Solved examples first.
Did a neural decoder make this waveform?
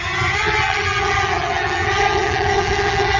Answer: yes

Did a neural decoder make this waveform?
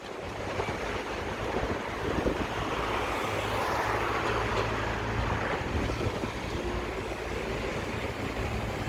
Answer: no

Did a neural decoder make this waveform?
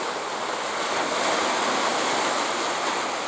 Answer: no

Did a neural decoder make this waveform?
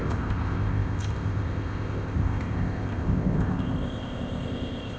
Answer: yes